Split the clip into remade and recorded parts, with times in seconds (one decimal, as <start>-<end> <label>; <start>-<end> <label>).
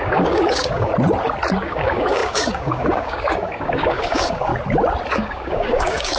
0.0-0.9 remade; 0.9-1.6 recorded; 1.6-4.5 remade; 4.5-5.1 recorded; 5.1-6.2 remade